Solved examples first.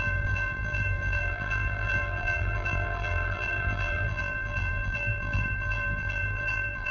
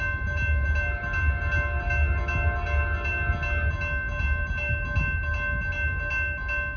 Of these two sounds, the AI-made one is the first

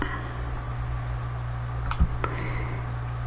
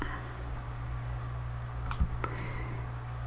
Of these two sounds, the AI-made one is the second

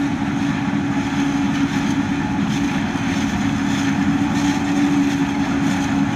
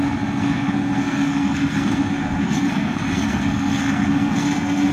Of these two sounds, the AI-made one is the second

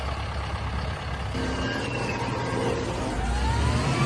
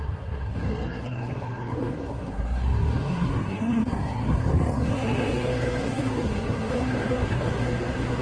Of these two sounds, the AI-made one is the second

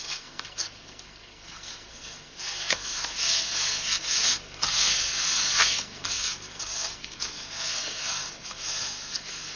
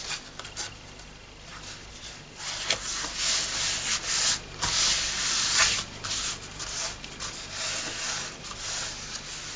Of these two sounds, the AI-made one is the first